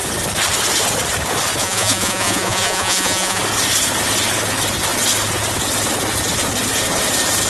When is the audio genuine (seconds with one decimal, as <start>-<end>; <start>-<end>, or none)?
0.0-1.6; 3.4-7.5